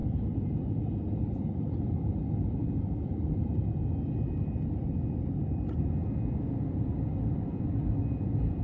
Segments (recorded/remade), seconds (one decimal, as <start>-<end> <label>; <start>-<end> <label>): 0.0-2.1 recorded; 2.1-3.5 remade; 3.5-6.3 recorded; 6.3-8.6 remade